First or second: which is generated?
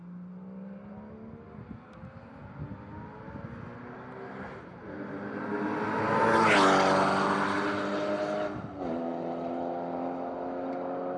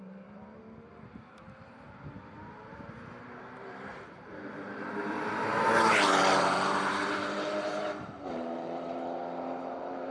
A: second